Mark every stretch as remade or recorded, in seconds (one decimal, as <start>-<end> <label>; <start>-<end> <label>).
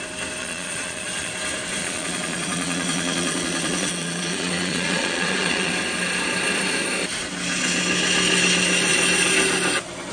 0.0-0.4 recorded; 0.4-1.3 remade; 1.3-1.8 recorded; 1.8-5.7 remade; 5.7-10.1 recorded